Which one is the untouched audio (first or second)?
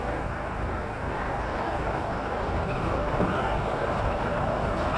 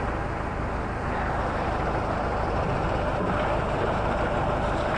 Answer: second